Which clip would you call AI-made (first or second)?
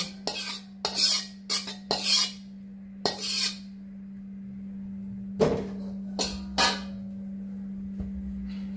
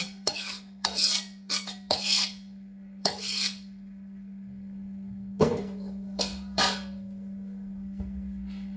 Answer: second